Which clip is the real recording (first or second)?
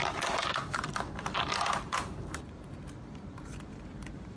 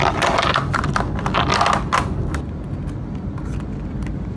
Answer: second